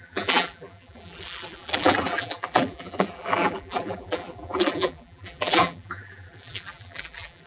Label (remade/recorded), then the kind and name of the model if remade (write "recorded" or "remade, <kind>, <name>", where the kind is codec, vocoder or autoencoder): remade, vocoder, BigVGAN v2